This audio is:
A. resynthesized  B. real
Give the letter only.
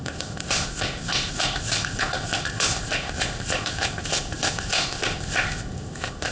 A